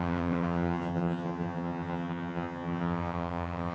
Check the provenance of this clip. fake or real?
fake